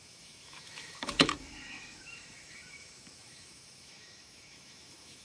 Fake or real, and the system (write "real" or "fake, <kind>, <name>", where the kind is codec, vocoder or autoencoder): fake, autoencoder, DAC-VAE